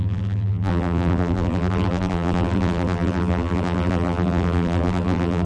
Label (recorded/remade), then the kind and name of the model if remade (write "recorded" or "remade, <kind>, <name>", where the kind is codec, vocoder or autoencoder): remade, vocoder, BigVGAN v2